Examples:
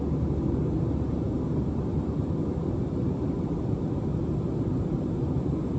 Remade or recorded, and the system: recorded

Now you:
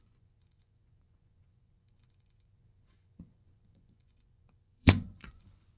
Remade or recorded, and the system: remade, vocoder, Vocos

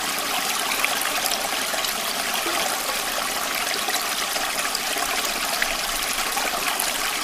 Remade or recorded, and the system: recorded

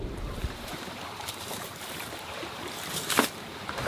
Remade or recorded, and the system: remade, vocoder, BigVGAN v2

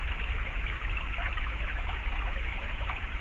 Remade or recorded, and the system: remade, autoencoder, DAC-VAE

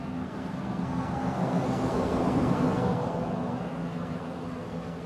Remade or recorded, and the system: remade, codec, SNAC